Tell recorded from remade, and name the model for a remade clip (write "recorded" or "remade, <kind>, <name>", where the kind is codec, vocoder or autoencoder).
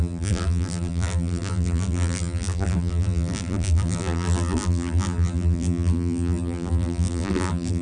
remade, vocoder, BigVGAN v2